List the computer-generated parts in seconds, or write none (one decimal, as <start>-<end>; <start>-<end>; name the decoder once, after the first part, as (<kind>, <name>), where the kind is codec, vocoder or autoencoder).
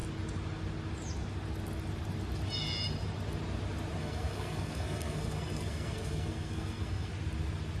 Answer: 4.0-7.1 (codec, SNAC)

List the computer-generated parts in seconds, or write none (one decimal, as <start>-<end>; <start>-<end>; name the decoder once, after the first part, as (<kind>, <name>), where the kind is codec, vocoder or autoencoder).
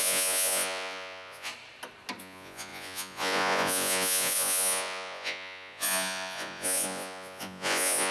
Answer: 0.0-1.5 (vocoder, Vocos); 2.2-8.1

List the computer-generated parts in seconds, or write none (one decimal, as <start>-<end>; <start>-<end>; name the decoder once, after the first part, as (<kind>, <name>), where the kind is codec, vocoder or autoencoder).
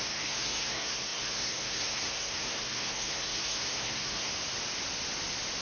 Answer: 0.0-4.3 (codec, SNAC)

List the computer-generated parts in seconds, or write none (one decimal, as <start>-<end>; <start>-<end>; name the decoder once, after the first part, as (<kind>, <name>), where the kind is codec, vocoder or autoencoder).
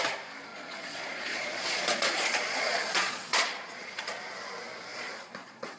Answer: 0.5-4.0 (vocoder, Vocos); 4.9-5.8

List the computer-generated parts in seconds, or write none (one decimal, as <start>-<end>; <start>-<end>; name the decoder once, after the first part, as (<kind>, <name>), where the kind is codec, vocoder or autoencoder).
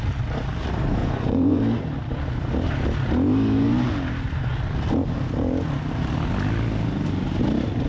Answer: 1.0-1.6 (vocoder, Vocos)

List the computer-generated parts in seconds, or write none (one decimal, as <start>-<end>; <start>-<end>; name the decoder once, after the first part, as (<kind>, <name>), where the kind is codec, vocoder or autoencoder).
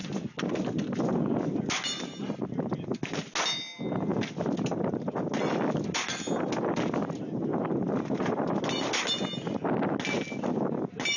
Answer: 0.0-1.4 (vocoder, BigVGAN v2)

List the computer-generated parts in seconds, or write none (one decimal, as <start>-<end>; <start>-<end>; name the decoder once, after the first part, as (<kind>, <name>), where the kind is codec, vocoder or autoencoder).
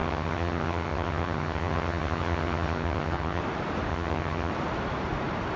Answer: 0.0-3.4 (vocoder, HiFi-GAN); 3.9-4.5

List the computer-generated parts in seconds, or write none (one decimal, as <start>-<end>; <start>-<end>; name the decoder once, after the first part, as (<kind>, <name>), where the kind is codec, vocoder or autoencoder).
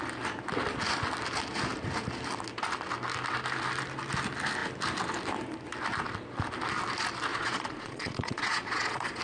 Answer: 7.3-9.2 (vocoder, Vocos)